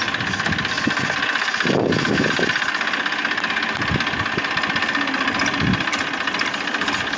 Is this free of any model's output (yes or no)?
yes